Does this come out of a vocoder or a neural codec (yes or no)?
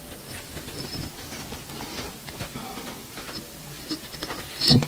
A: yes